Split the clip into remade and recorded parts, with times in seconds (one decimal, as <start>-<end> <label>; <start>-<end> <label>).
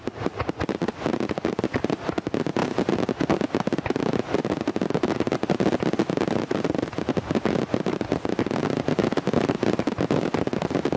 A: 0.0-11.0 recorded